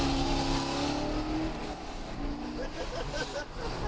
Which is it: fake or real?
real